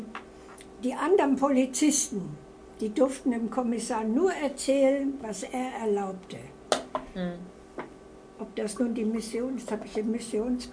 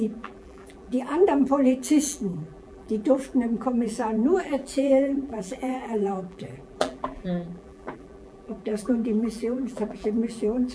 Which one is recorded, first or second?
first